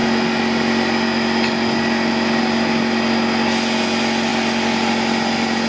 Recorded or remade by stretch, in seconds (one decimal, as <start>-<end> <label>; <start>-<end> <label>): 0.0-5.7 recorded

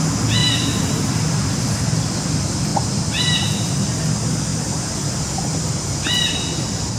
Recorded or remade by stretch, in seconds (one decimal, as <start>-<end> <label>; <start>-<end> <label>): 0.0-0.4 recorded; 0.4-1.7 remade; 1.7-2.7 recorded; 2.7-4.0 remade; 4.0-4.5 recorded; 4.5-5.8 remade; 5.8-7.0 recorded

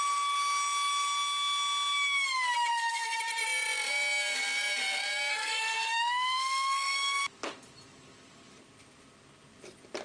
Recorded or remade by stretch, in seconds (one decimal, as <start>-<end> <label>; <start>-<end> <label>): 0.0-2.7 recorded; 2.7-3.2 remade; 3.2-5.3 recorded; 5.3-7.2 remade; 7.2-10.0 recorded

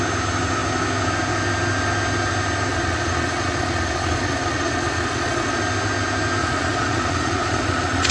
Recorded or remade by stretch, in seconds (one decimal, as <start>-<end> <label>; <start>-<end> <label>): 0.0-2.7 recorded; 2.7-5.6 remade; 5.6-6.4 recorded; 6.4-8.1 remade

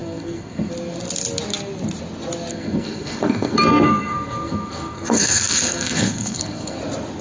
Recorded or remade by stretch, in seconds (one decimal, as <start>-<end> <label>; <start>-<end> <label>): 0.0-0.7 remade; 0.7-2.5 recorded; 2.5-6.8 remade; 6.8-7.2 recorded

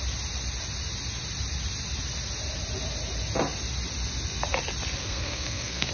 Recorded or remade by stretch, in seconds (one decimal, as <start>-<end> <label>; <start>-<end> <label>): 0.0-5.0 recorded; 5.0-5.9 remade

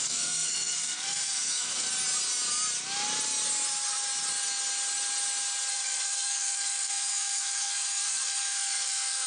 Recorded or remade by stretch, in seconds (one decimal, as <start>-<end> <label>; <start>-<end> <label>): 0.0-1.9 remade; 1.9-5.7 recorded; 5.7-9.3 remade